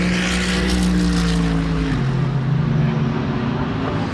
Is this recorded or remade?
recorded